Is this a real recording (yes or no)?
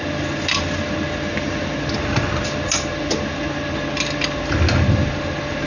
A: yes